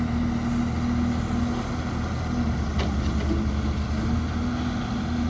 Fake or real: real